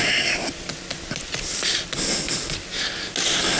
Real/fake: real